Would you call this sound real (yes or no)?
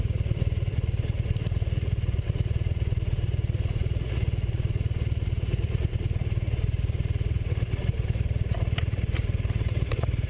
no